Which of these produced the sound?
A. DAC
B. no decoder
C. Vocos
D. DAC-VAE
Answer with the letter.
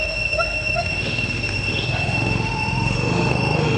D